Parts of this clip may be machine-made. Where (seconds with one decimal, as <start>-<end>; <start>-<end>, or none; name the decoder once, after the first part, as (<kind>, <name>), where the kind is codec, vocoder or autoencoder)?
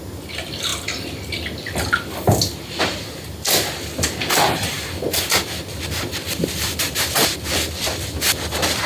none